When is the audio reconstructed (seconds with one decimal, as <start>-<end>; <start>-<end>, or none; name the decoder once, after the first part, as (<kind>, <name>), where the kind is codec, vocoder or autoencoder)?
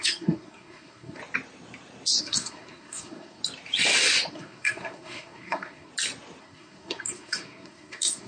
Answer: 0.0-1.2 (codec, SNAC); 2.2-3.4; 4.3-5.9; 6.4-8.3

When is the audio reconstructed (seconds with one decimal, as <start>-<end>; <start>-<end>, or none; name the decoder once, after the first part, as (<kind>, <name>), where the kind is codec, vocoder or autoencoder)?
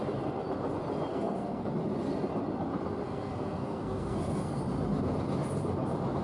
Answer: 1.1-1.7 (codec, SNAC); 3.0-4.6